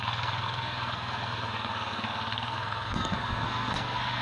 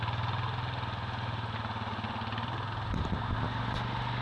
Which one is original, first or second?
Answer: second